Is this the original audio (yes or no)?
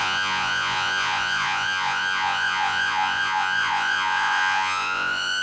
no